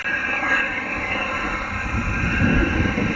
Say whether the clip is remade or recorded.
recorded